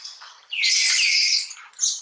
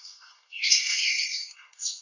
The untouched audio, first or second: first